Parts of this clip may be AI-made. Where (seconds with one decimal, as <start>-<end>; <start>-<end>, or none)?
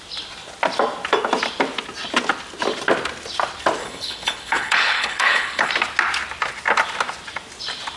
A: 3.8-5.7